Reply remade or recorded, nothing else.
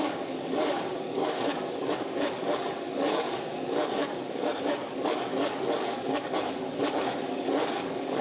remade